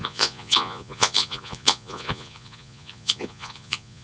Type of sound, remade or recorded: remade